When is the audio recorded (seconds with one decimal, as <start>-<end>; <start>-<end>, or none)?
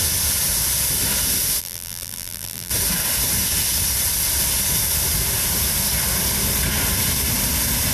0.0-1.6; 2.7-7.9